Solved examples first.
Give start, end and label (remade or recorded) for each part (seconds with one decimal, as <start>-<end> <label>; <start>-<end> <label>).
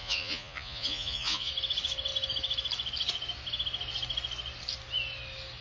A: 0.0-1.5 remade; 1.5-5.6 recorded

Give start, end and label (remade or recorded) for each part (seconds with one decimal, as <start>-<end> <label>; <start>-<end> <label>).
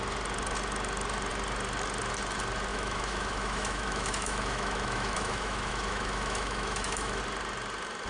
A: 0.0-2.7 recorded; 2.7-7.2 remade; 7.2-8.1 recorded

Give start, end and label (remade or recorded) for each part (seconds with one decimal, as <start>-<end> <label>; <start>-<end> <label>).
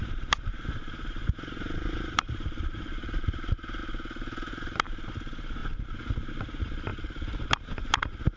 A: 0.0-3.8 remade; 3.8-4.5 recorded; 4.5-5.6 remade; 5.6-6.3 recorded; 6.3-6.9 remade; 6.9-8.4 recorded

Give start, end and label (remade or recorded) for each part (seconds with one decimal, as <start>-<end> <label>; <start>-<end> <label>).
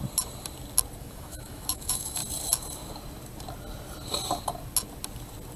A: 0.0-1.0 recorded; 1.0-2.2 remade; 2.2-5.6 recorded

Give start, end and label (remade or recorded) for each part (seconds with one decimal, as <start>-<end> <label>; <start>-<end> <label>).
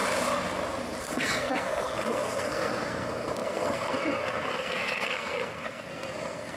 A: 0.0-1.0 recorded; 1.0-6.6 remade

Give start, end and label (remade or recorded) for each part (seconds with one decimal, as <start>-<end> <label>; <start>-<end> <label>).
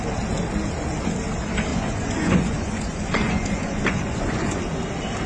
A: 0.0-1.7 recorded; 1.7-4.6 remade; 4.6-5.3 recorded